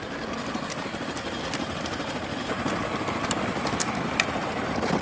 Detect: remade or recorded recorded